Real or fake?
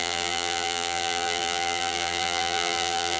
fake